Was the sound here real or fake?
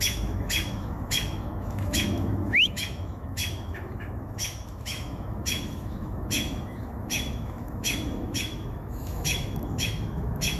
fake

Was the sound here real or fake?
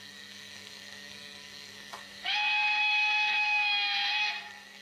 fake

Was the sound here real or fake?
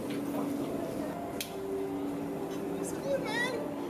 real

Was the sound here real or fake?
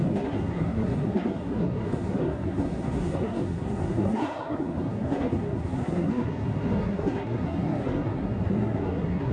fake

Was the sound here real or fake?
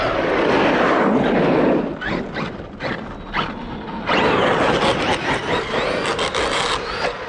real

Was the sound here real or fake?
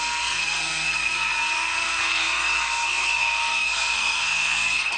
fake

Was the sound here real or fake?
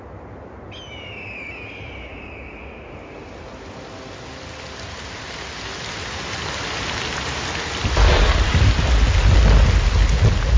real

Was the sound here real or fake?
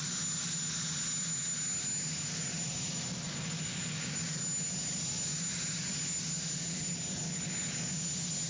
real